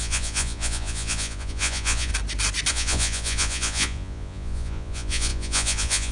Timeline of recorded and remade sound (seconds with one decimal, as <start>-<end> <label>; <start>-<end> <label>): 0.0-2.1 remade; 2.1-2.7 recorded; 2.7-6.1 remade

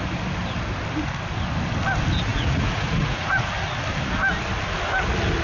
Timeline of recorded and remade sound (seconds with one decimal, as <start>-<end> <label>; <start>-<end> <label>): 0.0-2.3 recorded; 2.3-3.5 remade; 3.5-5.4 recorded

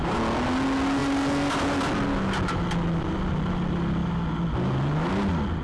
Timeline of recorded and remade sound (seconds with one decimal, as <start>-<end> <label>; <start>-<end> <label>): 0.0-5.6 recorded